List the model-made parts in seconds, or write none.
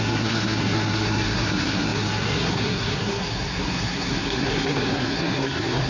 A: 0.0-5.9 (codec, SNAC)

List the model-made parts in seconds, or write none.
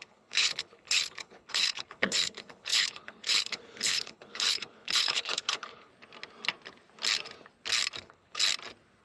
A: 0.0-5.9 (codec, HILCodec); 8.0-8.4